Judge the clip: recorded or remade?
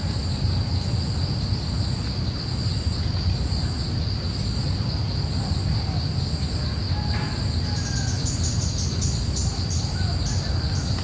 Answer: recorded